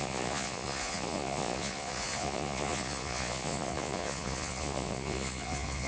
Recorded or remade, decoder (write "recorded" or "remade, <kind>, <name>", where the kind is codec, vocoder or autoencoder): remade, vocoder, Vocos